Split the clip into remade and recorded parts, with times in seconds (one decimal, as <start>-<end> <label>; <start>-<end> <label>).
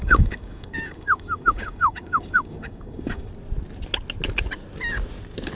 0.0-3.3 remade; 3.3-5.5 recorded